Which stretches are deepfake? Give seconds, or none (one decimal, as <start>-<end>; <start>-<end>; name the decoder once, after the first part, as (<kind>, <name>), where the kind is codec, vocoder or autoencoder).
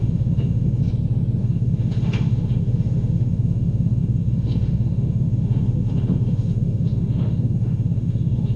0.0-0.8 (autoencoder, DAC-VAE); 1.4-8.6